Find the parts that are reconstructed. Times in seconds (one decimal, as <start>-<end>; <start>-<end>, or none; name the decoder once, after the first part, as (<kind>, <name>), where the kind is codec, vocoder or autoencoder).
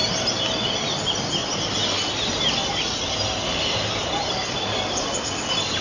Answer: none